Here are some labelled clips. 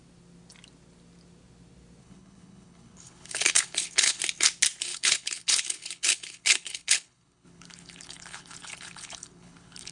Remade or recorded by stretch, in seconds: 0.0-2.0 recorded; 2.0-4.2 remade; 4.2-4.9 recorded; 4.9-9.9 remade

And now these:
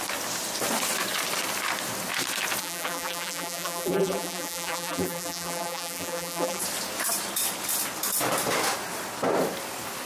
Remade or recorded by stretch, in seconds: 0.0-2.6 recorded; 2.6-6.6 remade; 6.6-10.1 recorded